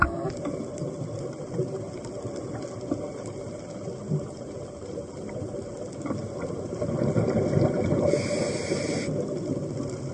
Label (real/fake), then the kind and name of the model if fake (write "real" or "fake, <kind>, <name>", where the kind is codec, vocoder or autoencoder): real